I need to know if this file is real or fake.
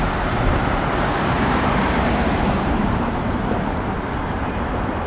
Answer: fake